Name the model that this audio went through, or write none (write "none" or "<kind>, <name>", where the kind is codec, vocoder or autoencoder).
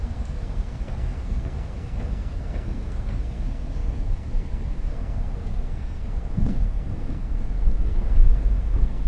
codec, SNAC